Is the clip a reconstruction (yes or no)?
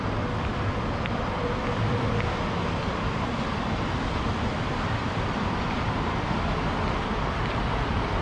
yes